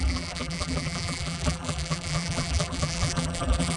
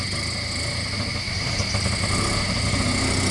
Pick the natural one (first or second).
second